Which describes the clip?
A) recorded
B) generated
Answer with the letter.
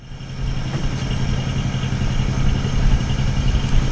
A